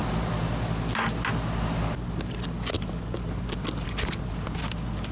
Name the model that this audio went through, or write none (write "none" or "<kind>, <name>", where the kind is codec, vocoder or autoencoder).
none